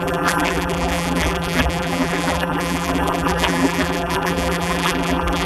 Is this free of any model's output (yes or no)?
no